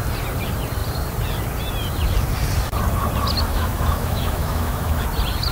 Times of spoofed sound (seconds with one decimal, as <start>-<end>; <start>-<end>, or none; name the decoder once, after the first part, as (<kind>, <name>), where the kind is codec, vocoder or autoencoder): 3.5-5.0 (autoencoder, DAC-VAE)